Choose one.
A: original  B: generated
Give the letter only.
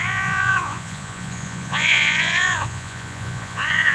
B